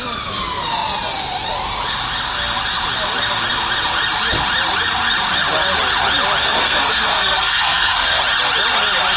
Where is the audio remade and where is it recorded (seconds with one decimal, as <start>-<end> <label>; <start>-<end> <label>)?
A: 0.0-6.4 recorded; 6.4-8.2 remade; 8.2-9.2 recorded